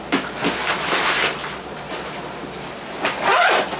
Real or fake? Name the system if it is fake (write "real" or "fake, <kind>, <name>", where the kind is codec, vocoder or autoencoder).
real